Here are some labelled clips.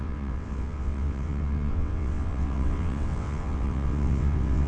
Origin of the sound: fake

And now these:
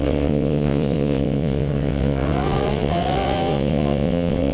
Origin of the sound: fake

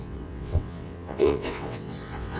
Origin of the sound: fake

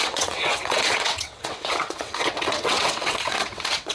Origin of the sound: fake